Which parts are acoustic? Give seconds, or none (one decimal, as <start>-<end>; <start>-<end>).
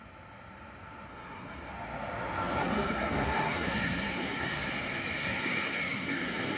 0.0-1.1; 1.7-2.6; 4.7-5.2